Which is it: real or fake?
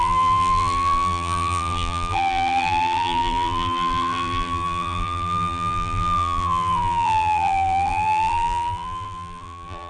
fake